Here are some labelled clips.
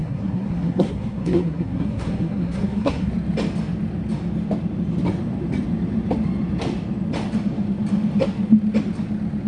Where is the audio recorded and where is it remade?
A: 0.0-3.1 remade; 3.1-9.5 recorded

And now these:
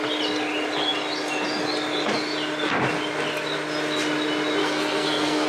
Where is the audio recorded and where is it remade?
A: 0.0-4.6 recorded; 4.6-5.5 remade

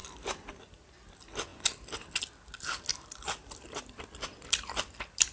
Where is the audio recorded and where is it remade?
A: 0.0-5.3 recorded

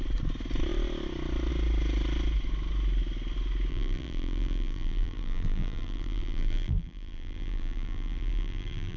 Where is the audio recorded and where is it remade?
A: 0.0-3.7 recorded; 3.7-9.0 remade

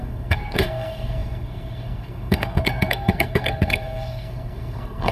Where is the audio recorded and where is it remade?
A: 0.0-5.1 remade